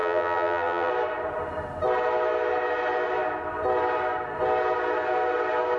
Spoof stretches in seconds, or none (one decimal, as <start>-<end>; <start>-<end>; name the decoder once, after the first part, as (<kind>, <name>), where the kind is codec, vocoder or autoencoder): 0.0-0.9 (vocoder, BigVGAN v2)